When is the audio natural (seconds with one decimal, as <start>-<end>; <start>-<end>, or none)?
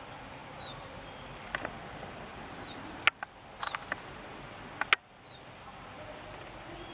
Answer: 0.0-6.9